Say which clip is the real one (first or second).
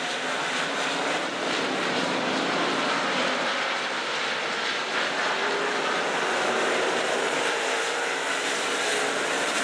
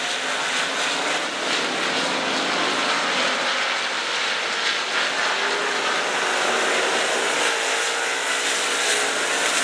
second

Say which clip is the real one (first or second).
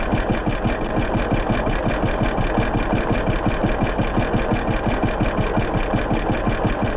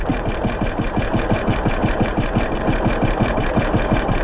first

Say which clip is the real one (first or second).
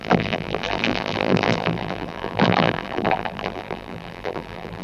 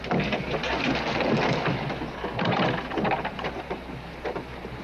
second